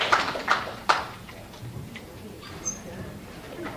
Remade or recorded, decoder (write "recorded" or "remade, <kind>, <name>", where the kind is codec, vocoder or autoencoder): remade, vocoder, BigVGAN v2